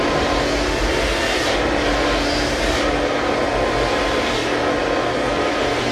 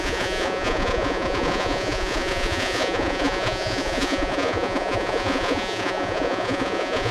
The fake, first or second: second